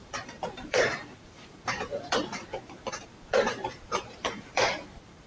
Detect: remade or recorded remade